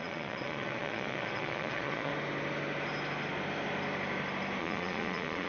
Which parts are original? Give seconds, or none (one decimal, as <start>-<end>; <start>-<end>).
2.1-4.6